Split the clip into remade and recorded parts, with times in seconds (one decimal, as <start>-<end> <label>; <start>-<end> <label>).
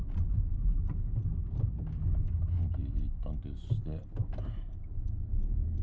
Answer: 0.0-0.8 remade; 0.8-4.0 recorded; 4.0-5.8 remade